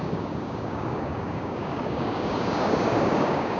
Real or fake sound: fake